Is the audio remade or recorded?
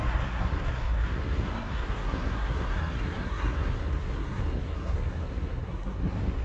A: remade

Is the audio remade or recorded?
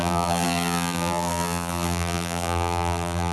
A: remade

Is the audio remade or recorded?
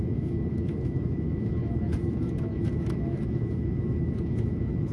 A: remade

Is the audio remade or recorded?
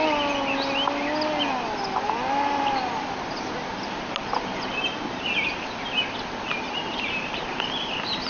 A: recorded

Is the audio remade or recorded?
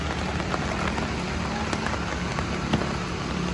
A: recorded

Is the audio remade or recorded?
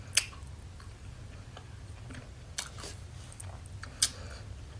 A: recorded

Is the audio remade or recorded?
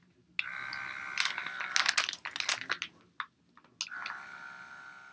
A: recorded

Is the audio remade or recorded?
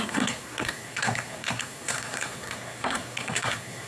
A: remade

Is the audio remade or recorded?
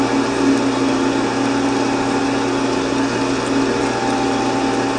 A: recorded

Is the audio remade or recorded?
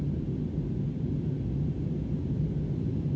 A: recorded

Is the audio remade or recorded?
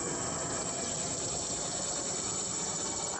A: remade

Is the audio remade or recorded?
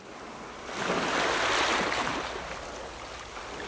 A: recorded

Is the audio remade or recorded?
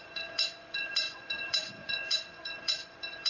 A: remade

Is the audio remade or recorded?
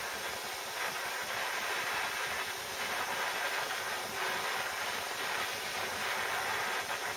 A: recorded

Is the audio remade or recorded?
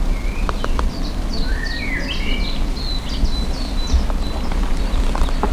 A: recorded